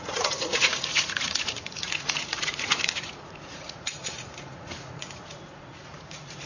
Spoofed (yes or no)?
yes